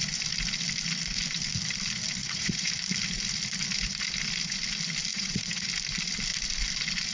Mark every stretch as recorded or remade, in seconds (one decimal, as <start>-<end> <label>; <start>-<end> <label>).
0.0-2.2 recorded; 2.2-2.7 remade; 2.7-5.1 recorded; 5.1-5.7 remade; 5.7-7.1 recorded